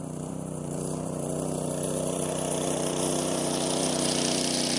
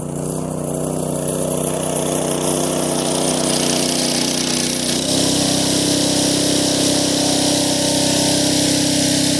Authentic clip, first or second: second